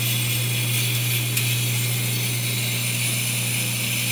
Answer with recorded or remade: recorded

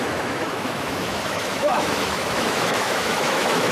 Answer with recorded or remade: remade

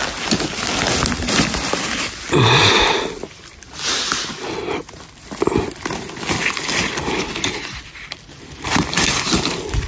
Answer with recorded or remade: recorded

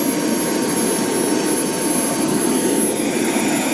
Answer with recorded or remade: recorded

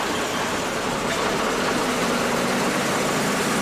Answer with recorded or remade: recorded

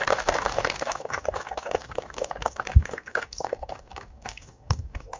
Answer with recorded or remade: remade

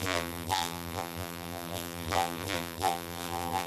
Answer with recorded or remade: remade